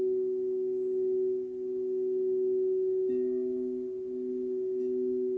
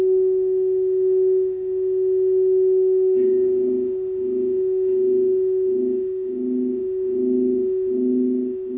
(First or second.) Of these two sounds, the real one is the first